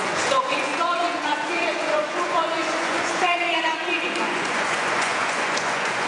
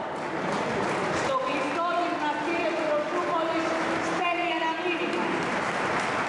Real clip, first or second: second